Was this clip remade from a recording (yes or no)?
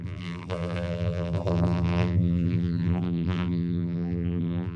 yes